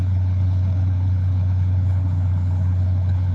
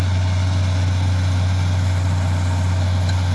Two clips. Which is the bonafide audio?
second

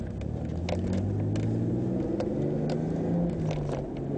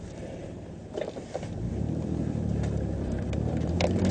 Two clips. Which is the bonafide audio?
first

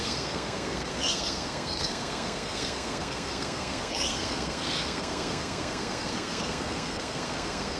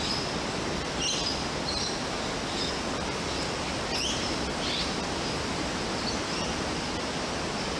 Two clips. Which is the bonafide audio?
second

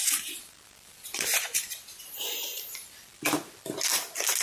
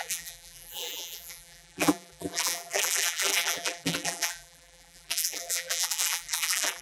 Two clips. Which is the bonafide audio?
first